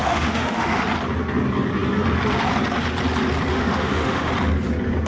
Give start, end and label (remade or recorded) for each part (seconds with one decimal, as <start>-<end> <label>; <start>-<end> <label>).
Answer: 0.0-0.8 remade; 0.8-3.5 recorded; 3.5-4.3 remade; 4.3-5.1 recorded